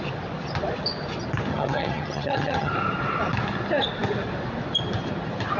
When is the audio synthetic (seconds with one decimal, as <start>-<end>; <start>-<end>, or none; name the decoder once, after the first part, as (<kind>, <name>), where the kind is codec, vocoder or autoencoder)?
1.5-2.7 (vocoder, HiFi-GAN)